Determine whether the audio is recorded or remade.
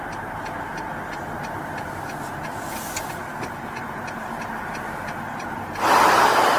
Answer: recorded